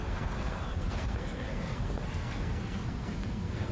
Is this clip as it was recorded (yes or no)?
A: no